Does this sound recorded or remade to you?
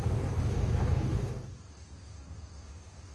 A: remade